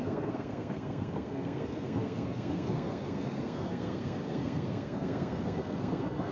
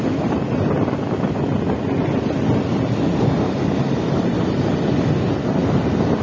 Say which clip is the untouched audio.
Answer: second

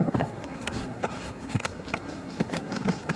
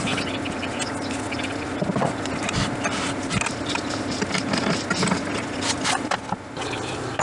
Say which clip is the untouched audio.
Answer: second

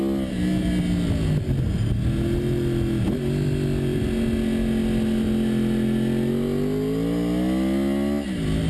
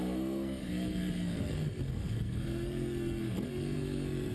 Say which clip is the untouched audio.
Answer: first